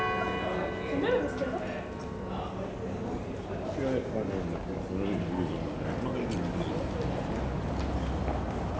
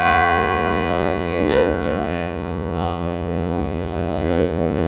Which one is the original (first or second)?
first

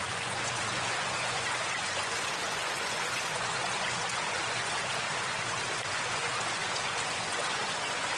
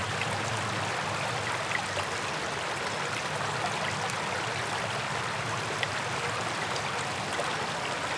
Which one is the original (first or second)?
second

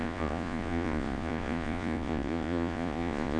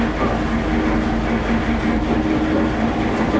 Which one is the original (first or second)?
second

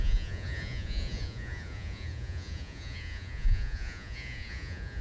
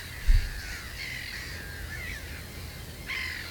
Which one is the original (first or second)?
second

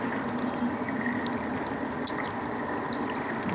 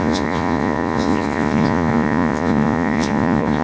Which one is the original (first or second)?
first